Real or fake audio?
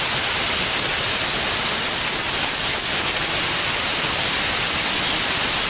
real